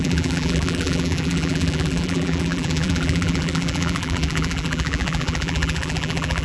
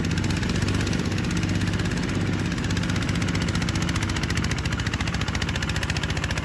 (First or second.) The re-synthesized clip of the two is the first